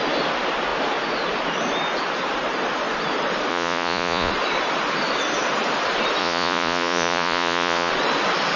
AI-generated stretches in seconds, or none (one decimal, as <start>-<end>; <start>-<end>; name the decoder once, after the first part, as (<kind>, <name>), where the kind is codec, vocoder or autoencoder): 3.5-4.3 (vocoder, Vocos); 6.2-7.9